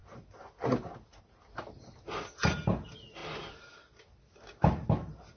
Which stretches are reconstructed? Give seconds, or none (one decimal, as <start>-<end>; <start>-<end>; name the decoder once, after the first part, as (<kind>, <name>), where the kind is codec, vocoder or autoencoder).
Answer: none